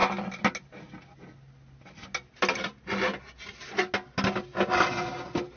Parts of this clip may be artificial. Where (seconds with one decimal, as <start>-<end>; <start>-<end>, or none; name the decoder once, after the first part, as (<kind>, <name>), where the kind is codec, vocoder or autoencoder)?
none